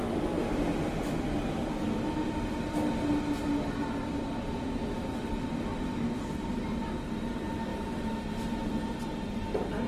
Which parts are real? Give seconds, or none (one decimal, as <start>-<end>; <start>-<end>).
0.0-9.9

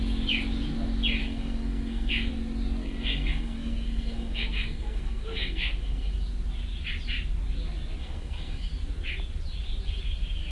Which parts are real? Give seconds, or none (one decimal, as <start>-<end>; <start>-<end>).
0.0-1.2; 2.3-2.8; 6.1-8.0; 8.7-10.5

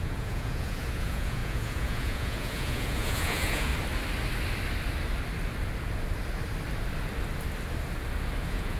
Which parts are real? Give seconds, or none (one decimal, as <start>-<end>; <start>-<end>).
3.7-8.4